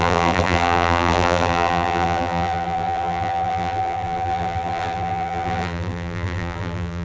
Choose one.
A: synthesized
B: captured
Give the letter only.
A